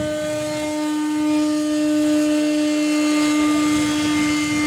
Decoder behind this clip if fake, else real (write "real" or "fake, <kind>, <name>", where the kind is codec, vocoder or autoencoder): real